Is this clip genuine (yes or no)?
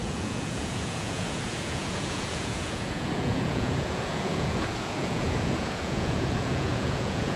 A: no